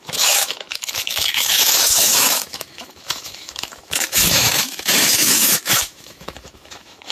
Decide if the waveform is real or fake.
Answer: fake